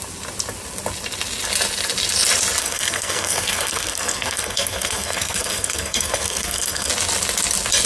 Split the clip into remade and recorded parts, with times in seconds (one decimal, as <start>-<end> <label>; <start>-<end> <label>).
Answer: 0.0-2.6 recorded; 2.6-6.9 remade; 6.9-7.9 recorded

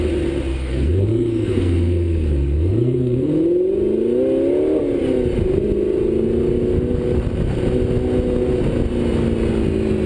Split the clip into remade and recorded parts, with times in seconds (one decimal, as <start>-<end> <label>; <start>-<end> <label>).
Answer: 0.0-0.5 recorded; 0.5-3.3 remade; 3.3-10.1 recorded